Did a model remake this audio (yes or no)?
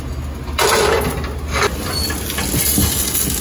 no